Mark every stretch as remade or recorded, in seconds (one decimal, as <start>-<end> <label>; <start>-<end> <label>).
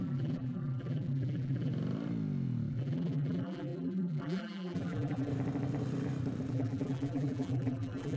0.0-1.7 remade; 1.7-2.7 recorded; 2.7-5.3 remade; 5.3-6.5 recorded; 6.5-8.2 remade